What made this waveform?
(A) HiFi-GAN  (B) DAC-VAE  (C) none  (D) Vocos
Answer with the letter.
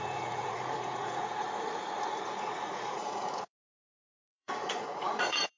D